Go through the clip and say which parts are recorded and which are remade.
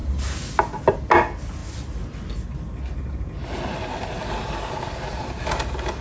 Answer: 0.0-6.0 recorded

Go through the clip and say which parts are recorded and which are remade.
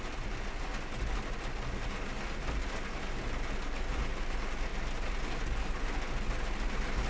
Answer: 0.0-7.1 recorded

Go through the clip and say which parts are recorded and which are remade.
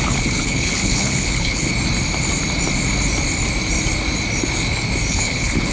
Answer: 0.0-1.7 remade; 1.7-5.1 recorded; 5.1-5.7 remade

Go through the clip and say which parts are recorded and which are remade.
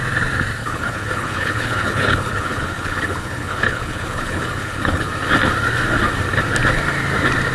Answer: 0.0-0.6 recorded; 0.6-5.1 remade; 5.1-7.5 recorded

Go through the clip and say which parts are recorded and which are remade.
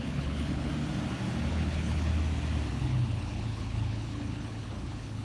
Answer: 0.0-0.7 remade; 0.7-1.5 recorded; 1.5-2.1 remade; 2.1-2.7 recorded; 2.7-5.2 remade